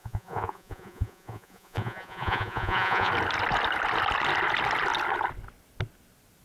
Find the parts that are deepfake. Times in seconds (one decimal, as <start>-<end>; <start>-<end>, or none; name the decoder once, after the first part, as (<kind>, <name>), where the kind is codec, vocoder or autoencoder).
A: 0.0-3.1 (vocoder, Vocos)